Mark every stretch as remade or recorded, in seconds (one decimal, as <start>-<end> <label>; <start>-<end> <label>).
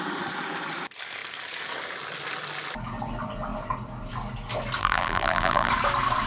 0.0-4.8 recorded; 4.8-5.7 remade; 5.7-6.3 recorded